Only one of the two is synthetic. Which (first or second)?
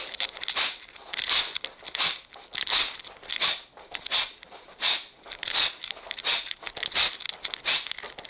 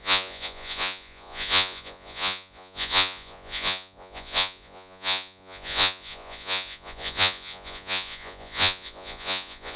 second